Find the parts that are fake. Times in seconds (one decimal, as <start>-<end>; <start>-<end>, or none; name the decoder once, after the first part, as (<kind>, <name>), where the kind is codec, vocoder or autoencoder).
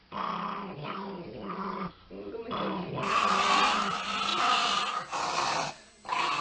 0.8-1.9 (codec, DAC)